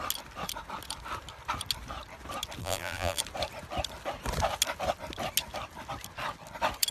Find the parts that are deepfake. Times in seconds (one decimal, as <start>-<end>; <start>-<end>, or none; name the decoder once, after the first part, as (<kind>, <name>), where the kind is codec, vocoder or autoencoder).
2.6-3.2 (vocoder, BigVGAN v2)